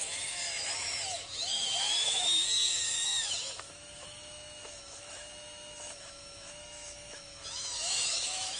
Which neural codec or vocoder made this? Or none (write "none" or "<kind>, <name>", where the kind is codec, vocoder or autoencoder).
autoencoder, DAC-VAE